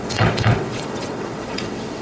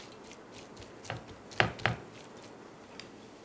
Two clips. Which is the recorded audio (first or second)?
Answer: second